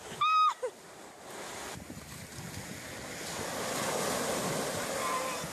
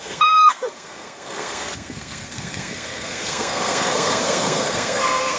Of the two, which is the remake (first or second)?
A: second